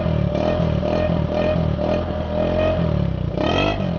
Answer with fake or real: real